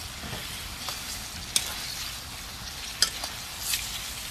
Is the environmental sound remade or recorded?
recorded